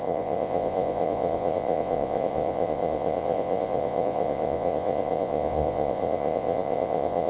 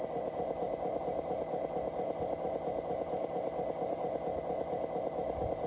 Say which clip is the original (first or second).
second